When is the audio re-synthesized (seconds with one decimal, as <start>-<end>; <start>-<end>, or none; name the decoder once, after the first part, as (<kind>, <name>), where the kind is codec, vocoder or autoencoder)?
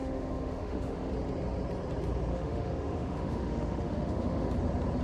0.0-1.1 (autoencoder, DAC-VAE); 2.3-4.5